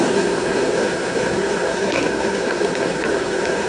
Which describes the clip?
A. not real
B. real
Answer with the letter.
A